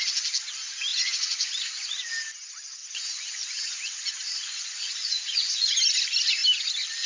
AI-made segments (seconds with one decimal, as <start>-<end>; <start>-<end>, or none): 0.9-1.7; 2.8-5.7

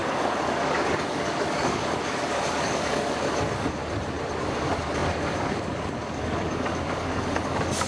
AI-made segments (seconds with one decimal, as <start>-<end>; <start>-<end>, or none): 0.0-3.8; 4.4-7.9

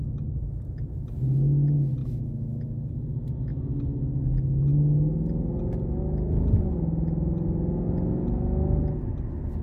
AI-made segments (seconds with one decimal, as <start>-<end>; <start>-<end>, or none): 2.0-2.9; 3.5-4.2

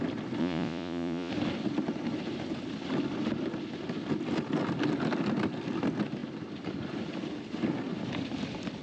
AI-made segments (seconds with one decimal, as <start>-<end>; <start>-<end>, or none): 0.4-1.3

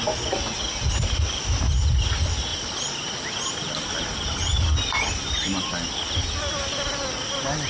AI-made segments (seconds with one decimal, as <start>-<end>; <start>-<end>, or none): none

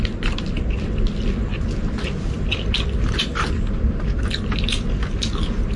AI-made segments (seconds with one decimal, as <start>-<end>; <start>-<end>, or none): 1.5-2.3; 3.3-4.3